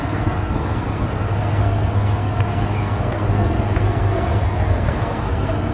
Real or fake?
fake